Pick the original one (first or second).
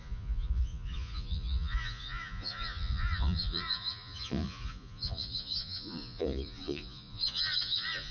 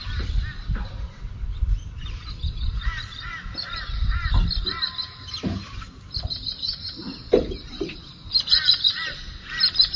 second